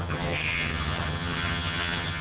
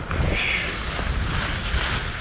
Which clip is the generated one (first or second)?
first